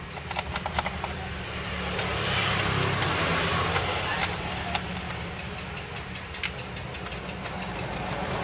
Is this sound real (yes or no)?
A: yes